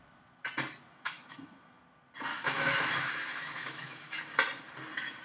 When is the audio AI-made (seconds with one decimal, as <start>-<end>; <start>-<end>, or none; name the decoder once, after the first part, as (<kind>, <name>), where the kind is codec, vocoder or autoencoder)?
0.9-1.8 (autoencoder, DAC-VAE); 2.3-4.2